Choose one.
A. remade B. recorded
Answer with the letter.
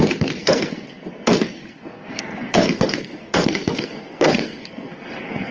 A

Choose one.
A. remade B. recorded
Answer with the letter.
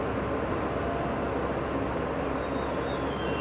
B